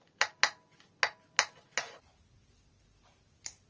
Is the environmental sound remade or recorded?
recorded